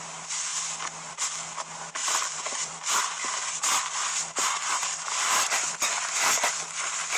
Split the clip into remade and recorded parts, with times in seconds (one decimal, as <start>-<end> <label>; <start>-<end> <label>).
0.0-2.0 recorded; 2.0-3.6 remade; 3.6-4.8 recorded; 4.8-6.5 remade; 6.5-7.2 recorded